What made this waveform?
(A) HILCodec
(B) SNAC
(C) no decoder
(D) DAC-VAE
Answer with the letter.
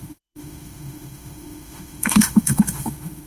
D